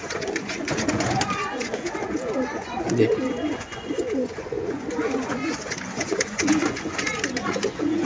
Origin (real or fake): fake